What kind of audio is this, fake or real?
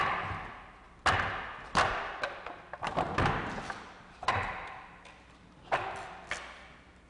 real